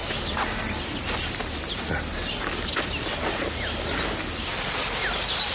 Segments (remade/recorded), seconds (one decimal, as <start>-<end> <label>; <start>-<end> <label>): 0.0-5.5 recorded

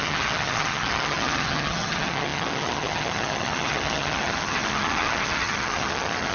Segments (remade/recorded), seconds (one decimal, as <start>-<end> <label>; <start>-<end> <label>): 0.0-6.3 remade

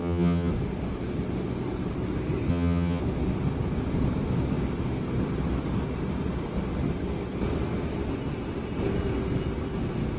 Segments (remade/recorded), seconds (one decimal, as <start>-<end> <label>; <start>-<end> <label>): 0.0-0.5 remade; 0.5-2.5 recorded; 2.5-3.0 remade; 3.0-10.2 recorded

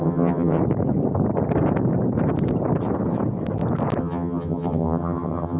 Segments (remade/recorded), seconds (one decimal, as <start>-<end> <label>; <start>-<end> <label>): 0.0-0.6 remade; 0.6-4.0 recorded; 4.0-5.6 remade

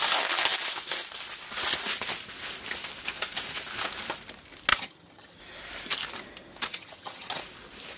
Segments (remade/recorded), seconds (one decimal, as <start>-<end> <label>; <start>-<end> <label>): 0.0-4.7 recorded; 4.7-5.4 remade; 5.4-6.7 recorded; 6.7-7.4 remade; 7.4-8.0 recorded